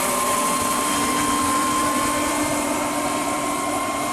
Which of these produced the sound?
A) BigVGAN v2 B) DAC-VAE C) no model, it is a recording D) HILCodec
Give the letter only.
A